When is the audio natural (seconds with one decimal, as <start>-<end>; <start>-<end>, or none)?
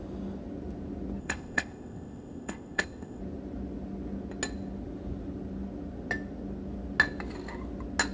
0.0-1.2; 3.2-8.1